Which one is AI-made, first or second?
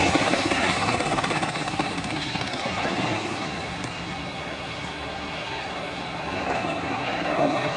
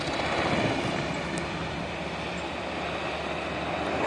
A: first